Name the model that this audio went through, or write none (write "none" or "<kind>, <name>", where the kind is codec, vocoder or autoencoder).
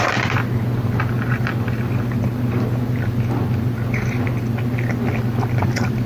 none